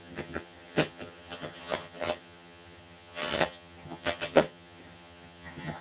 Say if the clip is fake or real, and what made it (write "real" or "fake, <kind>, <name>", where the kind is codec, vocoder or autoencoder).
fake, vocoder, HiFi-GAN